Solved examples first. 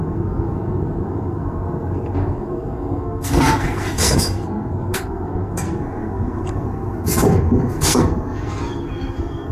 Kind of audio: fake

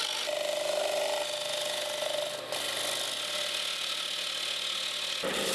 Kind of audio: real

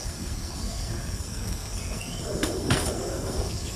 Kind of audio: fake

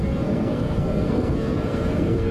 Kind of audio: fake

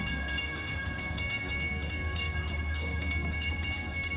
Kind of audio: fake